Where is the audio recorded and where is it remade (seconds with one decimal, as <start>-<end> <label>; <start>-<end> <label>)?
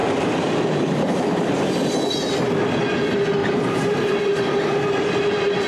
0.0-1.7 remade; 1.7-3.4 recorded; 3.4-4.2 remade; 4.2-5.7 recorded